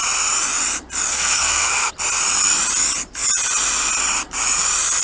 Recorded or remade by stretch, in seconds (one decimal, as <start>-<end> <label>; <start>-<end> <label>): 0.0-1.1 recorded; 1.1-1.9 remade; 1.9-5.0 recorded

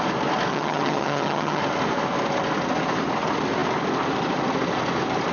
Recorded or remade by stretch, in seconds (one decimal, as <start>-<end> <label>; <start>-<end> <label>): 0.0-0.5 recorded; 0.5-1.6 remade; 1.6-5.3 recorded

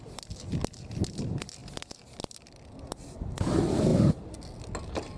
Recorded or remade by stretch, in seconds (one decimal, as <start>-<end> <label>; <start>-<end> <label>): 0.0-5.2 recorded

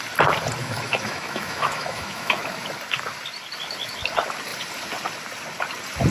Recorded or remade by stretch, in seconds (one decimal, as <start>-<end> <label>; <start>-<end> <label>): 0.0-0.6 recorded; 0.6-2.4 remade; 2.4-6.1 recorded

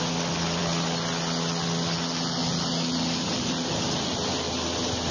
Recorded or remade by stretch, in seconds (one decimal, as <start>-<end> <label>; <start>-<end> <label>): 0.0-5.1 recorded

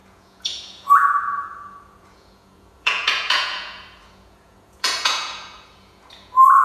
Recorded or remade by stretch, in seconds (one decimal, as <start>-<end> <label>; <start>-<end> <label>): 0.0-6.6 remade